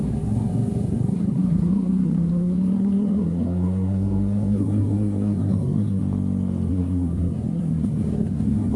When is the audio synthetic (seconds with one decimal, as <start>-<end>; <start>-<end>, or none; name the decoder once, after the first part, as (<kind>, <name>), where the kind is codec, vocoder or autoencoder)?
0.0-6.0 (codec, SNAC); 6.7-8.8